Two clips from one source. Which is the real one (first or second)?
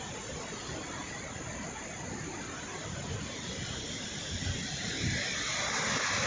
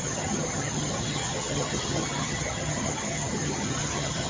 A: first